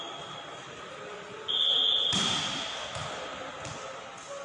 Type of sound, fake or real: real